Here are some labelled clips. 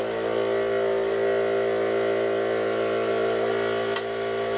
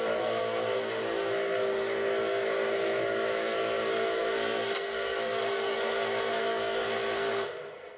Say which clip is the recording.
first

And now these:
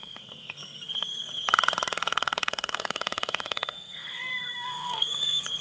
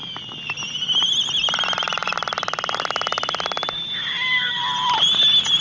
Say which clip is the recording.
second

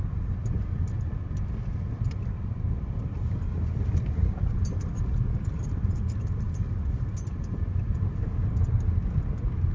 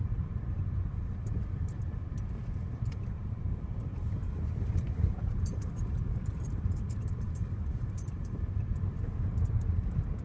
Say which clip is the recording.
first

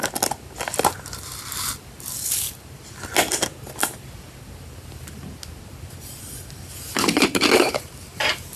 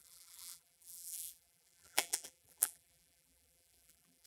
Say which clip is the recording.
first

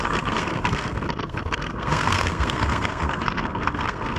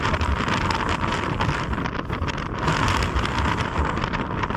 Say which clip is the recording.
second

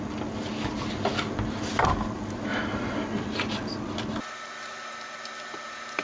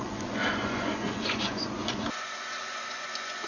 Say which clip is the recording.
first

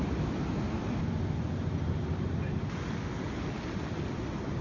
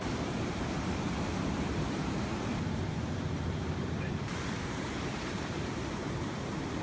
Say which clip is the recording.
first